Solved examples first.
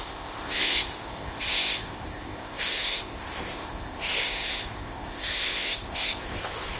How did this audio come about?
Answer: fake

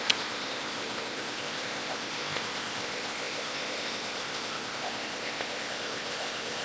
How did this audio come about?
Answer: fake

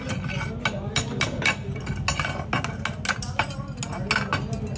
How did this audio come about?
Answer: real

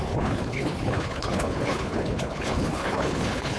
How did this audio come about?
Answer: fake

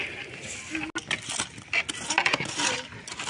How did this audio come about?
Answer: real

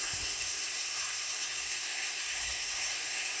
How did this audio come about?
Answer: fake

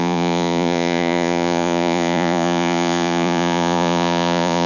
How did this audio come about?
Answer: fake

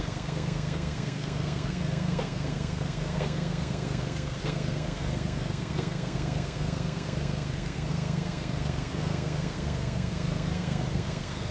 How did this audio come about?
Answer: fake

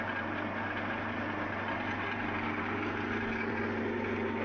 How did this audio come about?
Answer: real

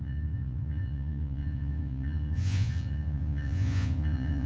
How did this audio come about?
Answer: fake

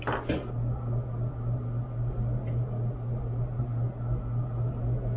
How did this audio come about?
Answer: real